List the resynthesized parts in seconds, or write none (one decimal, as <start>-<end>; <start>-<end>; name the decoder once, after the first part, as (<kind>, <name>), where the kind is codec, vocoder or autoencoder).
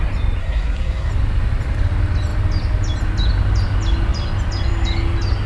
0.4-1.1 (codec, SNAC)